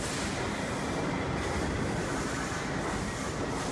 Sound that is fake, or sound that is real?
real